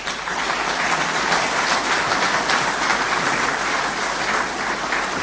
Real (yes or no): yes